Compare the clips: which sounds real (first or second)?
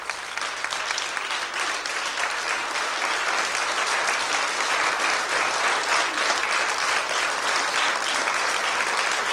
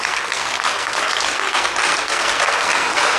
first